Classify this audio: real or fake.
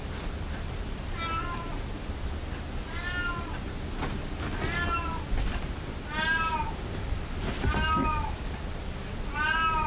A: real